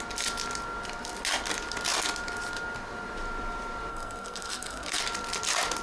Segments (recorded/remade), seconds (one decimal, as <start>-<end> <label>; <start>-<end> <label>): 0.0-3.9 recorded; 3.9-5.0 remade; 5.0-5.8 recorded